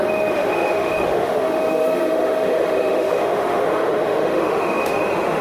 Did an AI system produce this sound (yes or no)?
yes